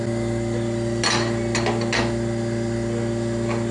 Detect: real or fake real